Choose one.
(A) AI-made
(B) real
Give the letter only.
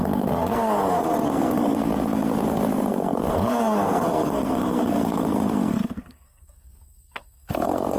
A